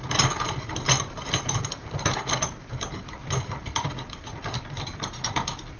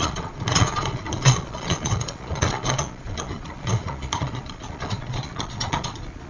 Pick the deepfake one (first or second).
second